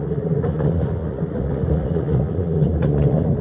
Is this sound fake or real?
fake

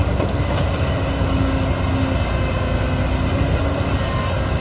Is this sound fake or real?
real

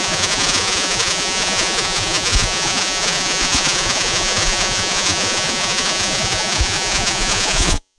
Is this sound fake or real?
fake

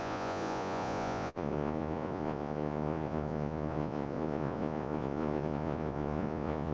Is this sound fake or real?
fake